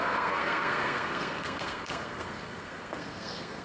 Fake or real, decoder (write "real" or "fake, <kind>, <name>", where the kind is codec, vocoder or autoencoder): fake, codec, SNAC